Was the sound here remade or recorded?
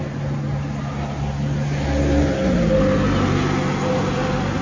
recorded